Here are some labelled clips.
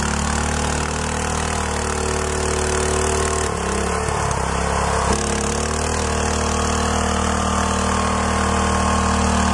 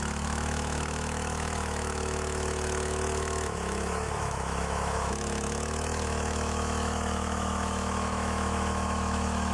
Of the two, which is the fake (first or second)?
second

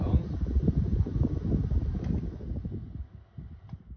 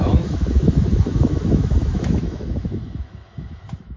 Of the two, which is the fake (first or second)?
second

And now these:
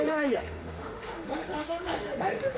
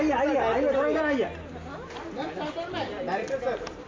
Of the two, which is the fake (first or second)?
first